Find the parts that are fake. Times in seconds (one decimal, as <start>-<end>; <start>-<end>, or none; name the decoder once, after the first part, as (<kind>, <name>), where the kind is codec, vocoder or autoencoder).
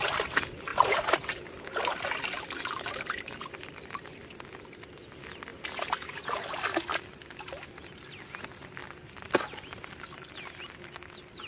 0.7-3.7 (vocoder, BigVGAN v2); 5.5-6.4; 8.8-10.4